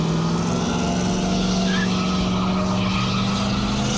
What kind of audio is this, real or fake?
real